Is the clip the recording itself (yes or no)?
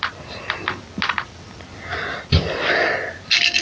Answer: yes